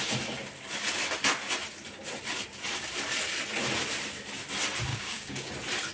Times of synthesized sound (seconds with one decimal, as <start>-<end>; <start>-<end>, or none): 4.9-5.5